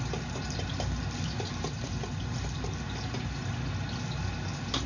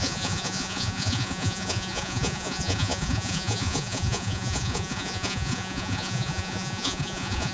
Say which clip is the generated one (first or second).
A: second